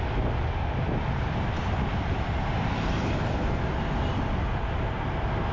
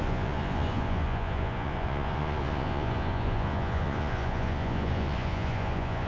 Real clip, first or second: first